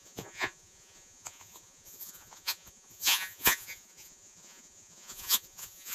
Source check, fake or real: fake